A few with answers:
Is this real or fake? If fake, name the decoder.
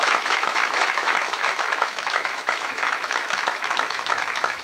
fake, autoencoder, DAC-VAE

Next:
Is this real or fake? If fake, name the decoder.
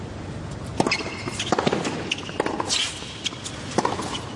real